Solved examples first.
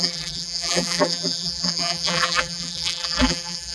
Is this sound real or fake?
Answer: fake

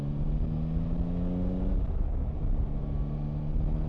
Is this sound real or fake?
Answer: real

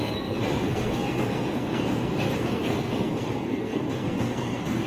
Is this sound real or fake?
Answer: fake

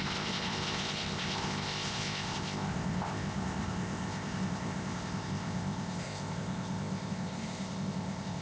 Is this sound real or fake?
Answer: fake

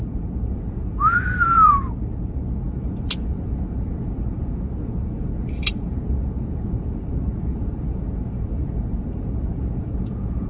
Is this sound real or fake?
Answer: fake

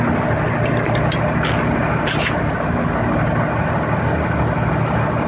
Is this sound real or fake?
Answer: real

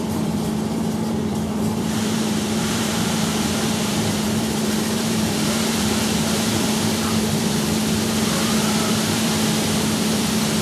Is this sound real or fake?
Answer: fake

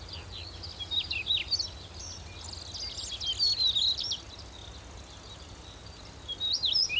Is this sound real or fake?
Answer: real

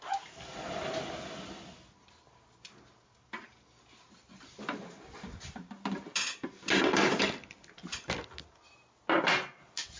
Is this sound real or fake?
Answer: real